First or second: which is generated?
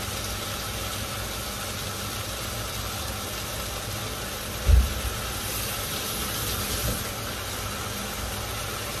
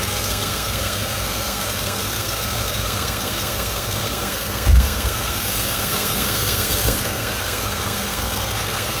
second